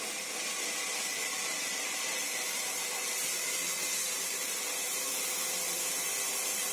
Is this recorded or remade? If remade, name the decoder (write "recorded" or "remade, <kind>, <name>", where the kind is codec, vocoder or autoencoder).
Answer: recorded